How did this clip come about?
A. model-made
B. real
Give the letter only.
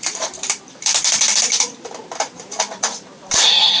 A